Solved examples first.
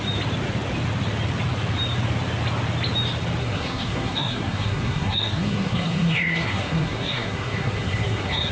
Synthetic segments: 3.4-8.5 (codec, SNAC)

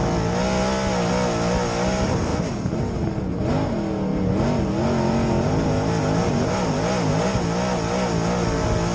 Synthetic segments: none

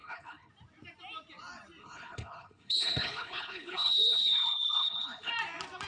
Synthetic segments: 0.0-0.5 (codec, HILCodec); 1.8-5.3

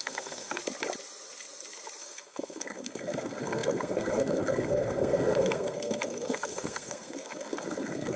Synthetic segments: 0.0-0.6 (codec, SNAC); 2.0-8.2

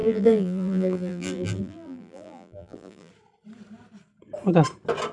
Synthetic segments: 0.0-3.1 (vocoder, BigVGAN v2)